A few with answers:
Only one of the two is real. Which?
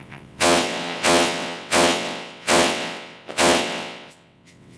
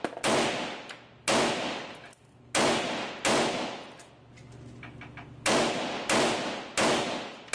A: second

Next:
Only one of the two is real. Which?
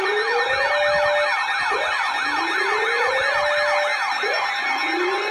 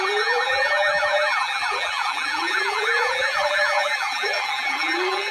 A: first